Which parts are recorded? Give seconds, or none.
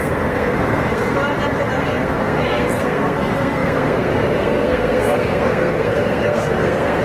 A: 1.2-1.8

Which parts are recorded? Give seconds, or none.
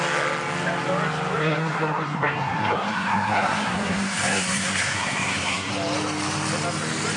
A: 0.0-1.4; 5.7-7.2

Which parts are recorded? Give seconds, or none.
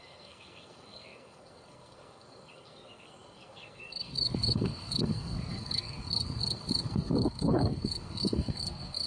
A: none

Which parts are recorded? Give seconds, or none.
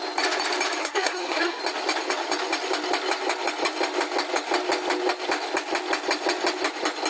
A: 0.0-0.8; 1.6-7.1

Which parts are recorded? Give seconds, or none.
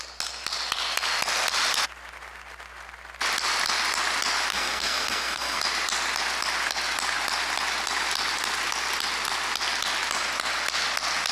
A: 0.0-4.5; 5.6-11.3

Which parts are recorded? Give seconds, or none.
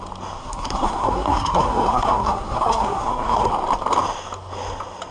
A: 0.0-0.4; 3.5-5.1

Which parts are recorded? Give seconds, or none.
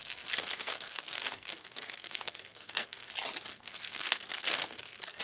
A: 3.1-3.5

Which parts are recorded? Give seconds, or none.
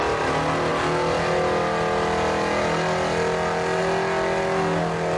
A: 0.0-5.2